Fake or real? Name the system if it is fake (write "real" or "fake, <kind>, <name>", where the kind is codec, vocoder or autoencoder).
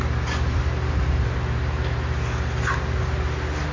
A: real